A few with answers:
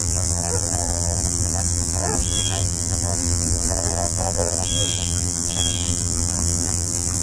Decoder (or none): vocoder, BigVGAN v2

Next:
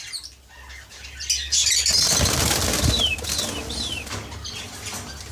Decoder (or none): none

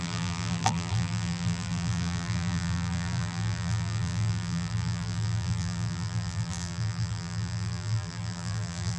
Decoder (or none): vocoder, BigVGAN v2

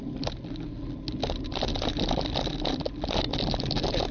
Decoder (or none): none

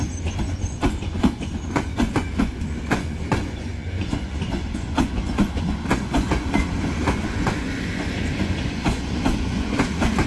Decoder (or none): vocoder, Vocos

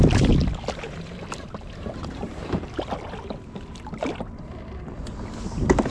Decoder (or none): vocoder, BigVGAN v2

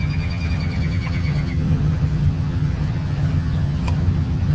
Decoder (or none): vocoder, HiFi-GAN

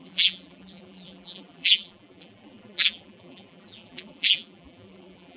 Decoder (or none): vocoder, BigVGAN v2